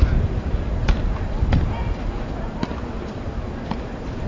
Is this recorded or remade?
remade